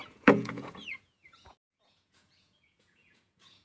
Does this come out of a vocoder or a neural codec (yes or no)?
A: yes